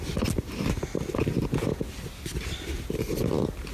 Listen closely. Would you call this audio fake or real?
real